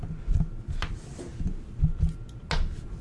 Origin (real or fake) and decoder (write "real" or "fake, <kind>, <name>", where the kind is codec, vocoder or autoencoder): real